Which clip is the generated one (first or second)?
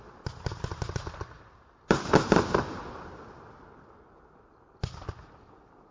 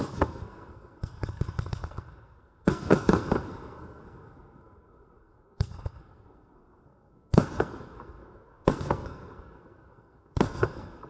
second